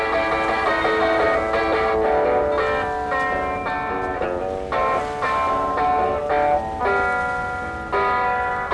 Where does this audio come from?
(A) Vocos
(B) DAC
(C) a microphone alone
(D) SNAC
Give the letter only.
C